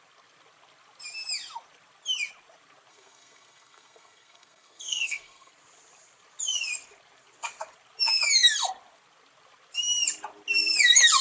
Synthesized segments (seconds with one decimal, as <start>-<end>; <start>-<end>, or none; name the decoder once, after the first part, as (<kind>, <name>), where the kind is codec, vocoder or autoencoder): 2.9-5.5 (codec, SNAC)